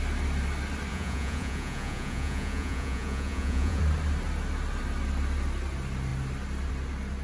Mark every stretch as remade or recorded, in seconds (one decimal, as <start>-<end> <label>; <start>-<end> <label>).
0.0-0.9 recorded; 0.9-3.8 remade; 3.8-7.2 recorded